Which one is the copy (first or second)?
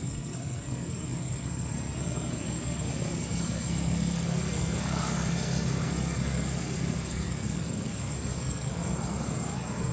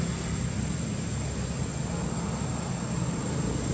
first